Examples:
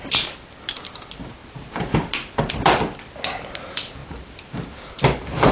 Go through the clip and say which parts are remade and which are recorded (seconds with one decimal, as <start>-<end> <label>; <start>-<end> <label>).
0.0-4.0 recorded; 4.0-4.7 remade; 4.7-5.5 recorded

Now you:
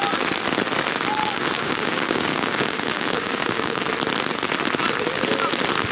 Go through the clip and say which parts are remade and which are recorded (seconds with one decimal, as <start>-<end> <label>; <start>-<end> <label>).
0.0-1.2 recorded; 1.2-3.9 remade; 3.9-5.9 recorded

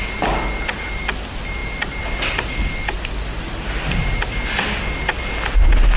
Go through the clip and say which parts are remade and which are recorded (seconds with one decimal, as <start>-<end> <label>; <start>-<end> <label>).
0.0-6.0 recorded